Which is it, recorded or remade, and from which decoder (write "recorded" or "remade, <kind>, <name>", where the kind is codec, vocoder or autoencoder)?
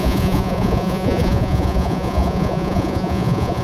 remade, vocoder, Vocos